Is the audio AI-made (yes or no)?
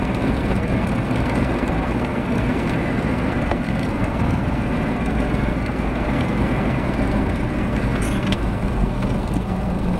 yes